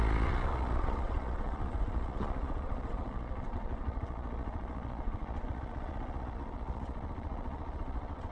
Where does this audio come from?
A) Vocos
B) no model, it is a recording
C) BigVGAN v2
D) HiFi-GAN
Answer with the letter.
A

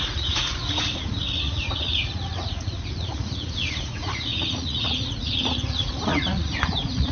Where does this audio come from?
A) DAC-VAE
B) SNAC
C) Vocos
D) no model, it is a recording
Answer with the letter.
C